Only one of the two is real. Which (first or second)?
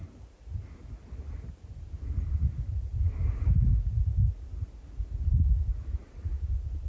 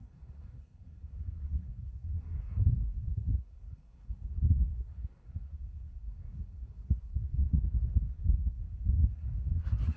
first